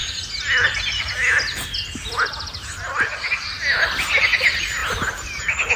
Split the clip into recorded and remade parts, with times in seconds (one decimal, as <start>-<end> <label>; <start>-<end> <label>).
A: 0.0-5.8 recorded

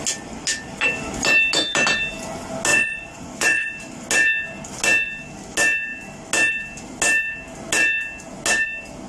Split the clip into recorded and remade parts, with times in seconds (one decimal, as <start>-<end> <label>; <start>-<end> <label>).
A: 0.0-2.7 recorded; 2.7-3.7 remade; 3.7-9.1 recorded

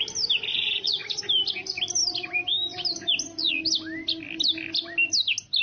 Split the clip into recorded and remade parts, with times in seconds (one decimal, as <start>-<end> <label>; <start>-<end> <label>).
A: 0.0-0.5 recorded; 0.5-1.2 remade; 1.2-5.6 recorded

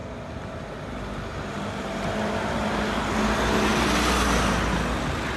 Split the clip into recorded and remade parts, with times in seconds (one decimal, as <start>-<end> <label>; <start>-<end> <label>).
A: 0.0-5.4 recorded

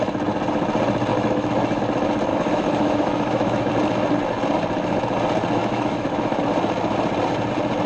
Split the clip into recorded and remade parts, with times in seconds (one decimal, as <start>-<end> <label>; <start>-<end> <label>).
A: 0.0-1.1 recorded; 1.1-1.8 remade; 1.8-2.3 recorded; 2.3-3.7 remade; 3.7-5.6 recorded; 5.6-6.4 remade; 6.4-7.9 recorded

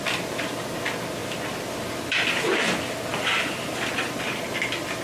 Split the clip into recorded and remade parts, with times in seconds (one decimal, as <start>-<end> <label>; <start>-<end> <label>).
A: 0.0-3.1 recorded; 3.1-4.5 remade; 4.5-5.0 recorded

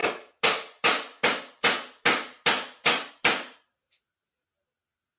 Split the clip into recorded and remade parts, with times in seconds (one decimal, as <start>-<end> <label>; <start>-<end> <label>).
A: 0.0-5.2 recorded

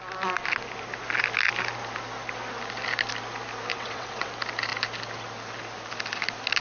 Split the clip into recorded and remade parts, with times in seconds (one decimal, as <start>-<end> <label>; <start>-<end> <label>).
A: 0.0-3.7 recorded; 3.7-4.3 remade; 4.3-6.6 recorded